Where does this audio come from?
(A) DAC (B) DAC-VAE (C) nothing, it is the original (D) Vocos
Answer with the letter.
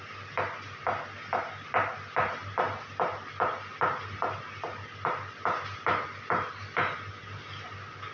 C